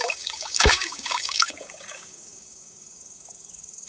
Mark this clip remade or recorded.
remade